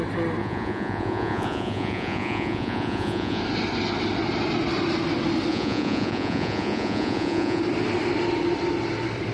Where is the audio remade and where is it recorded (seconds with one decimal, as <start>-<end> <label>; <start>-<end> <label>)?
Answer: 0.0-0.4 recorded; 0.4-3.4 remade; 3.4-5.5 recorded; 5.5-7.6 remade; 7.6-9.3 recorded